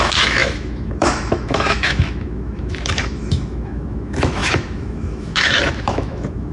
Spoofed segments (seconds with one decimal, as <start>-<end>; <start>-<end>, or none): 0.0-6.5